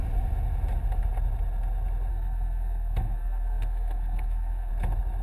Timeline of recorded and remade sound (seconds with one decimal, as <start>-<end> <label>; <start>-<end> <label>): 0.0-2.1 recorded; 2.1-4.7 remade; 4.7-5.2 recorded